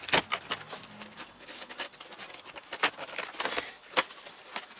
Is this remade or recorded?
recorded